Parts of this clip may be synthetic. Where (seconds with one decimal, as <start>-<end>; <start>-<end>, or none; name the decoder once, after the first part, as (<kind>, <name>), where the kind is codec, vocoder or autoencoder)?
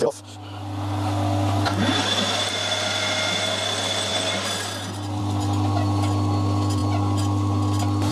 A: none